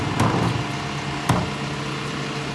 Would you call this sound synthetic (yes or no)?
no